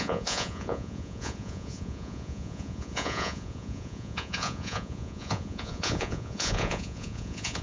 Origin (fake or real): fake